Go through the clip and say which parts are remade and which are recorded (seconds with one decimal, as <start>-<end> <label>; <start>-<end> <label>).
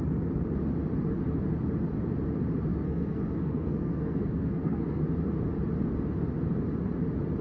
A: 0.0-2.7 recorded; 2.7-5.0 remade; 5.0-7.4 recorded